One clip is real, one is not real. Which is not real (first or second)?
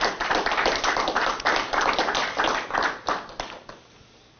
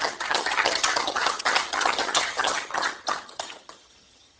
second